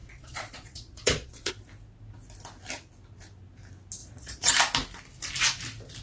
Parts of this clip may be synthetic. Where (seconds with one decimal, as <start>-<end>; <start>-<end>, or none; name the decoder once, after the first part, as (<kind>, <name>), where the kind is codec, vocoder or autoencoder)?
0.0-1.5 (vocoder, Vocos); 4.0-4.5